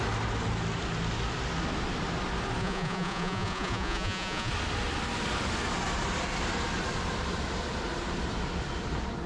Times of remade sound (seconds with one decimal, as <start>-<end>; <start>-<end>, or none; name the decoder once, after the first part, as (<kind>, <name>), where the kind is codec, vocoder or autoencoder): 2.6-4.5 (vocoder, Vocos)